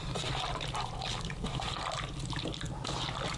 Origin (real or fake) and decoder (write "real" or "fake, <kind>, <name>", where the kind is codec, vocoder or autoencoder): real